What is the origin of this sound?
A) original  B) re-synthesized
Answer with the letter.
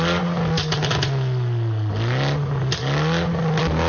A